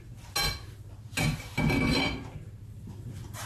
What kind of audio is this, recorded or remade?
recorded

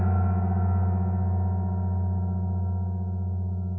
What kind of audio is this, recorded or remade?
recorded